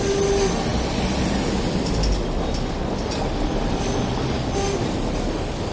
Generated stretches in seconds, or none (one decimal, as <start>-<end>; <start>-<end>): none